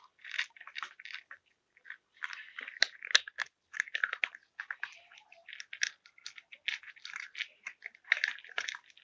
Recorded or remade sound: recorded